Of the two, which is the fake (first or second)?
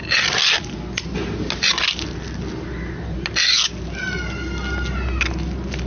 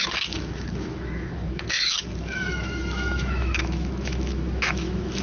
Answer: second